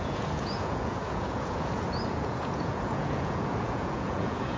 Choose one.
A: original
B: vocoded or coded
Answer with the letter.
B